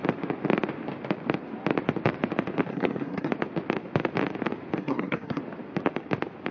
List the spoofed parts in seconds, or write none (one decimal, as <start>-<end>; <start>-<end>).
2.7-3.3; 4.8-5.4